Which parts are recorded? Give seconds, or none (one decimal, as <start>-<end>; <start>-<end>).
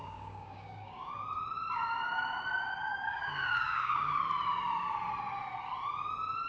1.1-2.9; 4.2-6.5